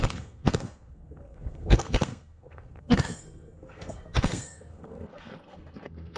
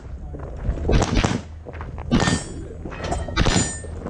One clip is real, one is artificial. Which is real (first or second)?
second